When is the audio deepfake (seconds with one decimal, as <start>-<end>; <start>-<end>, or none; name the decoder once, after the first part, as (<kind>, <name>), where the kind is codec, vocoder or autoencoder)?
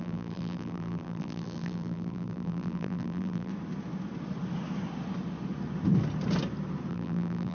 0.0-3.5 (vocoder, BigVGAN v2); 6.9-7.5